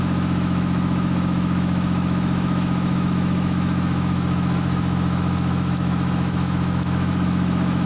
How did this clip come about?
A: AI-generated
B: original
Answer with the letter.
A